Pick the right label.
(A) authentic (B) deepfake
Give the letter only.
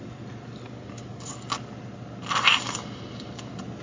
A